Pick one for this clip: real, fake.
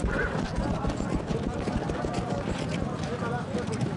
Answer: real